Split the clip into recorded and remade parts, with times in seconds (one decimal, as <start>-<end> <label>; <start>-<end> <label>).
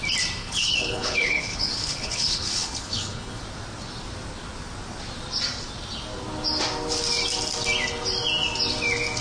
0.0-0.4 recorded; 0.4-3.4 remade; 3.4-9.2 recorded